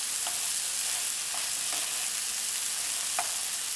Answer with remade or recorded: recorded